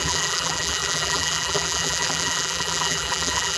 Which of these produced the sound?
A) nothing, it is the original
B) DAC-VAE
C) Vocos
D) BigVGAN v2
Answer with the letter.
D